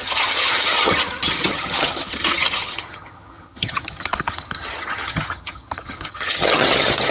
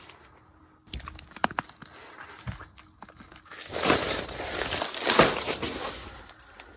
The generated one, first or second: first